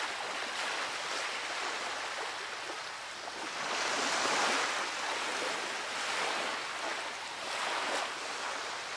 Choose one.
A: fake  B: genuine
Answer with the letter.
B